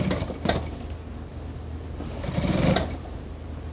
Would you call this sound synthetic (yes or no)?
no